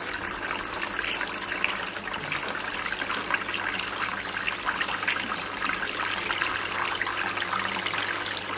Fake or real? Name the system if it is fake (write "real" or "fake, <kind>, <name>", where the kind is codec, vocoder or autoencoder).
real